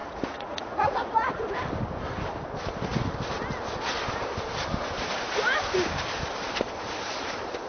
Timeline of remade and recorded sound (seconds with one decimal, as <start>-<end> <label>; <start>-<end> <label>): 0.0-1.6 remade; 1.6-7.7 recorded